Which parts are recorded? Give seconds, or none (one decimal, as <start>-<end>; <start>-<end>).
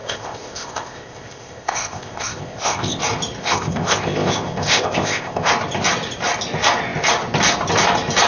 3.0-3.4; 5.5-8.3